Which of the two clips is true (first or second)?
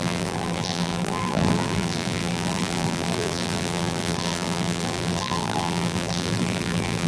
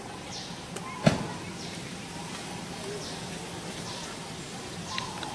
second